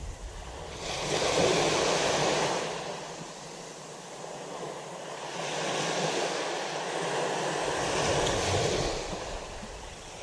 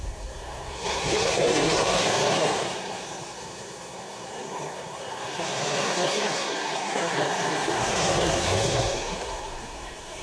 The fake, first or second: second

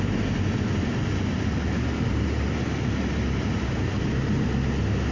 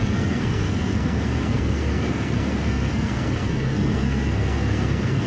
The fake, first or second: second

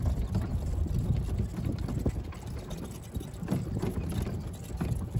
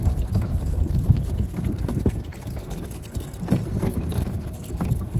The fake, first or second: second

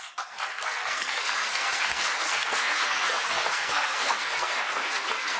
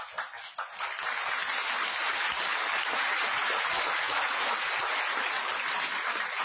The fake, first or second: first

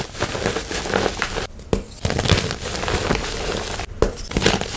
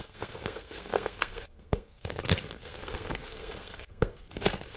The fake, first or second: second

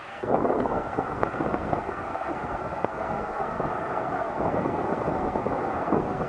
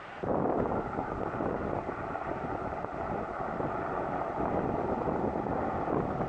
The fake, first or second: first